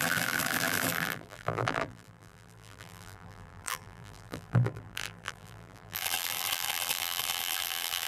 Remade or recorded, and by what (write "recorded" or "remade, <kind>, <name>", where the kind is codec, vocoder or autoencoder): remade, vocoder, BigVGAN v2